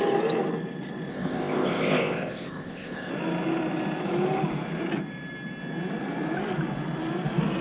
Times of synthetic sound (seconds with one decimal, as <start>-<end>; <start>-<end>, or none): 1.1-3.1